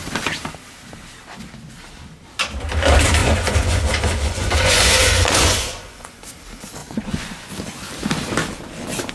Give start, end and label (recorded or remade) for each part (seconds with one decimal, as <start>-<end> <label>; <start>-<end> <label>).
0.0-3.2 recorded; 3.2-6.2 remade; 6.2-6.8 recorded; 6.8-7.5 remade; 7.5-9.1 recorded